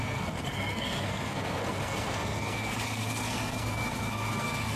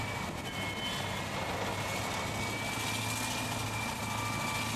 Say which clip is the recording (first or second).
second